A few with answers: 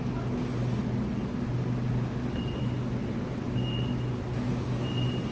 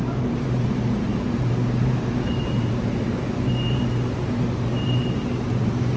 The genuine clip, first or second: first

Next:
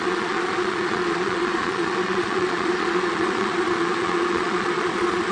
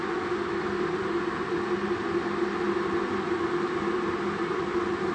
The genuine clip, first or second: second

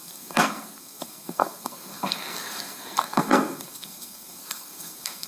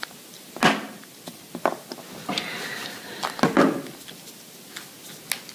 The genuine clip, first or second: second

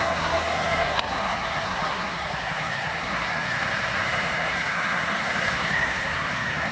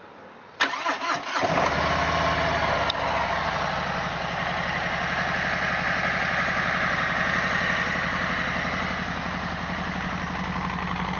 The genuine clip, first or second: second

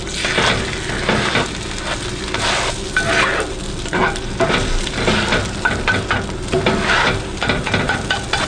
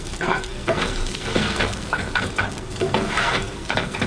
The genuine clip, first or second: first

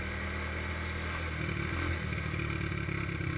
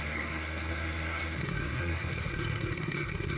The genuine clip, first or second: first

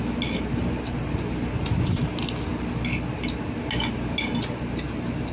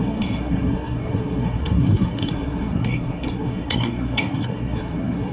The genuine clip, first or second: first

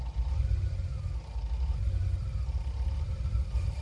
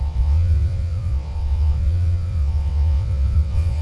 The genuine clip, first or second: first